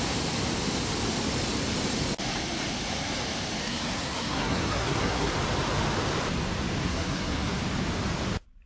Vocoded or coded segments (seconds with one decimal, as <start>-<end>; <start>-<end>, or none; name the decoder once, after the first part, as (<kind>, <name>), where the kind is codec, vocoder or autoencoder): 3.6-5.3 (codec, SNAC); 6.8-7.6